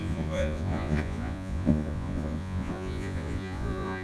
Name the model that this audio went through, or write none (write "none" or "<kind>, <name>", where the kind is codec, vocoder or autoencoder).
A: vocoder, Vocos